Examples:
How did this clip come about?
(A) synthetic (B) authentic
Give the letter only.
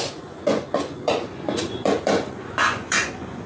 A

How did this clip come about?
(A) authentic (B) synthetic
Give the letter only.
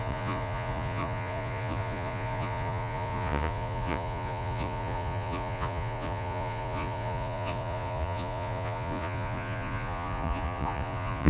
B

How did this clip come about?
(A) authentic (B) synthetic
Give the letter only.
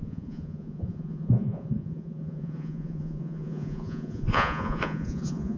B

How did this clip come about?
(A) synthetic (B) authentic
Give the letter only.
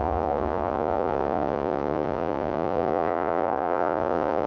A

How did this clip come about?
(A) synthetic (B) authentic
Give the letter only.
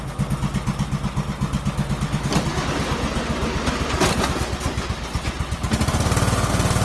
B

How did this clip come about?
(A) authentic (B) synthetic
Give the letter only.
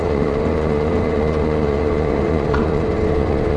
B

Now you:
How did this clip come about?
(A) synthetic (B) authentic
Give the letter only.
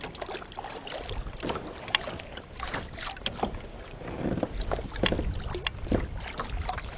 B